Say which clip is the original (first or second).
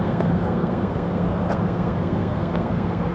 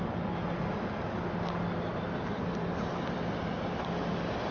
second